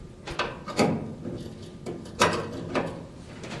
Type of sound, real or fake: real